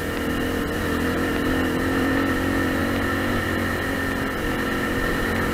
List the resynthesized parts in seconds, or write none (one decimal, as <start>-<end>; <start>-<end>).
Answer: none